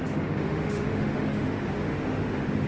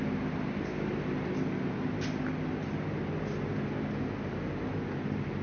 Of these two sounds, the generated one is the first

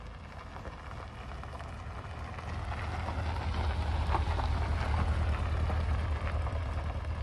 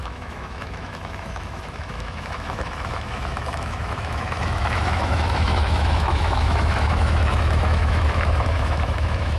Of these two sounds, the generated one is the second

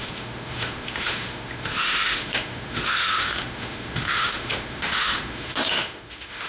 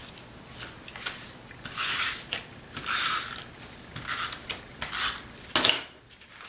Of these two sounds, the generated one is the first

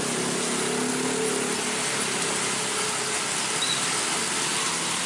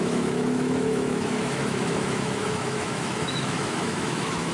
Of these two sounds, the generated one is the second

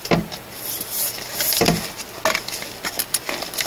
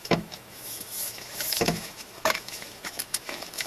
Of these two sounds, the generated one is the second